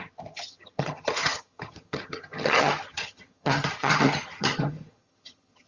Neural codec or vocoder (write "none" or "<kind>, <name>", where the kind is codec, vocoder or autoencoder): vocoder, HiFi-GAN